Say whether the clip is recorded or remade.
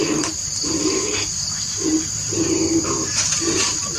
remade